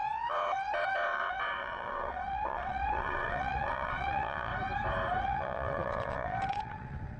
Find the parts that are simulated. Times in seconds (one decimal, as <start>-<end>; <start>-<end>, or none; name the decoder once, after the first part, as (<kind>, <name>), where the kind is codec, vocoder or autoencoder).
0.0-4.5 (vocoder, WaveNeXt); 5.2-7.2